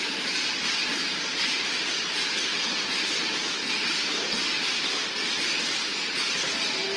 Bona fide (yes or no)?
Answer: no